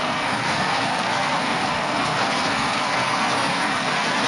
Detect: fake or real fake